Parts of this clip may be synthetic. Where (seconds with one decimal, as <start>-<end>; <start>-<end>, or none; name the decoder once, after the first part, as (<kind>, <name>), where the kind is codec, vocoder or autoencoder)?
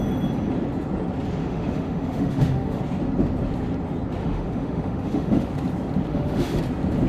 1.4-2.8 (autoencoder, DAC-VAE); 4.2-5.5; 6.1-6.6